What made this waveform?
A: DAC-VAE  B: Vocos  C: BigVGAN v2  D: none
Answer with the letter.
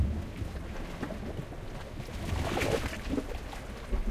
D